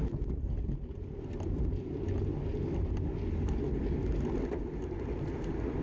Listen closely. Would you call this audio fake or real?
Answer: real